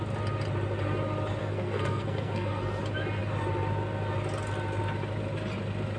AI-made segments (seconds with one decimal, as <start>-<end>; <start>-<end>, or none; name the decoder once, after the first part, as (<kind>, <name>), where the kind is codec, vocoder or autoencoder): 1.4-2.8 (codec, SNAC)